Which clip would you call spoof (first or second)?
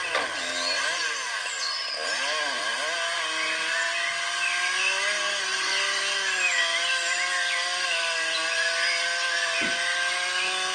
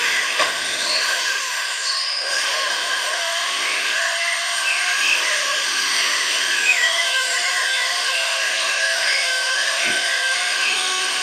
second